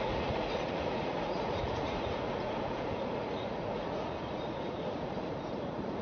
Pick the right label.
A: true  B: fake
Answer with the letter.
B